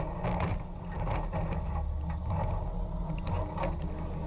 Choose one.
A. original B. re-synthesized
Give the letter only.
A